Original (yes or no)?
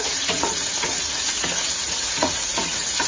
no